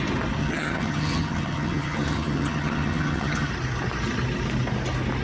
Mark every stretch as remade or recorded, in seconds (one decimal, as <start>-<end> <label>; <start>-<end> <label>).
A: 0.0-0.4 recorded; 0.4-3.5 remade; 3.5-5.2 recorded